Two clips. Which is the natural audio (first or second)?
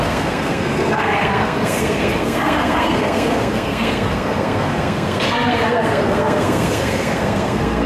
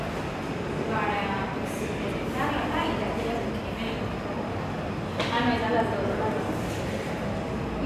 second